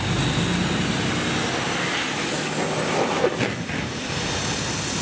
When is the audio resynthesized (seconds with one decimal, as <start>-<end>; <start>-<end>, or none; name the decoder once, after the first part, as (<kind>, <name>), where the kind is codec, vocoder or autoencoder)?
none